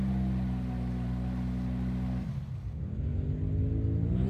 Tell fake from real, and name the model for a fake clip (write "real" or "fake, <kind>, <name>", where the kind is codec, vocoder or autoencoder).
real